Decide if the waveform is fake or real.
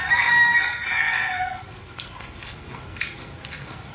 fake